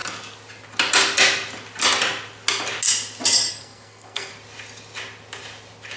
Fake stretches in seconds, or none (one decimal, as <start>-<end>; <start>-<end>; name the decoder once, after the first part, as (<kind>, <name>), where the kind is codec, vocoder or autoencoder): 3.5-4.3 (codec, SNAC)